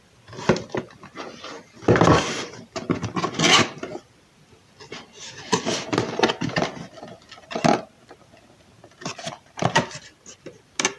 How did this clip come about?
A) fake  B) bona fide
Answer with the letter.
B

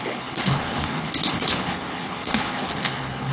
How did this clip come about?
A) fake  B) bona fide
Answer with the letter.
A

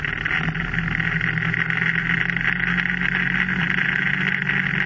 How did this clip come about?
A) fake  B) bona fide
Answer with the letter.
B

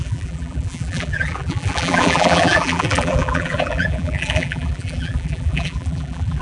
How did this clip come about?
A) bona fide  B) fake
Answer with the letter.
B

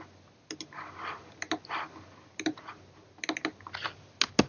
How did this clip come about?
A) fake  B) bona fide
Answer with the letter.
B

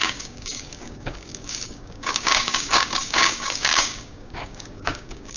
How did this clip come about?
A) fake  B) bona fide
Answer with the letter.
A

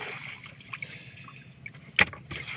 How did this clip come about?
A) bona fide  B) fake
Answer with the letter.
A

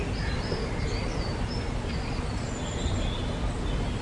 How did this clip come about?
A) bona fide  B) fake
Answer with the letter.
A